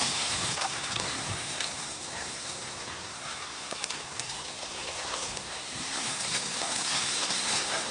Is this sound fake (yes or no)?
yes